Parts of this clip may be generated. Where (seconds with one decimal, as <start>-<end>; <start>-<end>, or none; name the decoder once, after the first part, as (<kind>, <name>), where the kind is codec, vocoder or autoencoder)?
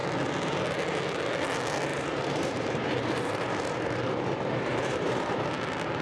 1.9-5.5 (vocoder, BigVGAN v2)